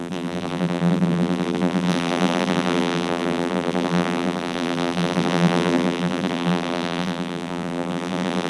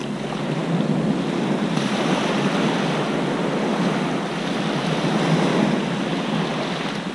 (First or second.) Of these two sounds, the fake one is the first